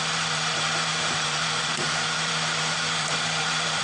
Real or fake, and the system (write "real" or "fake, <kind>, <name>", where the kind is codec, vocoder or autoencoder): fake, vocoder, BigVGAN v2